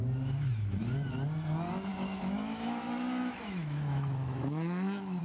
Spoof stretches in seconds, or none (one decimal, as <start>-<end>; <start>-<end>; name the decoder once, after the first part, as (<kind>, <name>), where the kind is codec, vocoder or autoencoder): 1.9-5.2 (autoencoder, DAC-VAE)